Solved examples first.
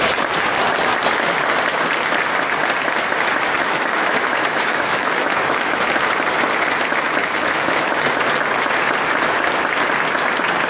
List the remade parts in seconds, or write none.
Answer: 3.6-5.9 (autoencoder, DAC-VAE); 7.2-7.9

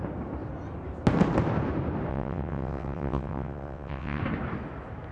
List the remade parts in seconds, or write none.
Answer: 2.1-4.2 (vocoder, WaveNeXt)

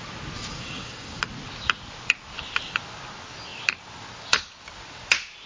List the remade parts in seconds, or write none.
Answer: 0.5-1.2 (codec, DAC)